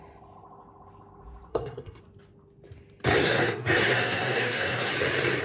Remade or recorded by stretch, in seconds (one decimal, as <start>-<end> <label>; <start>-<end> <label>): 0.0-1.5 recorded; 1.5-2.0 remade; 2.0-3.2 recorded; 3.2-4.9 remade; 4.9-5.4 recorded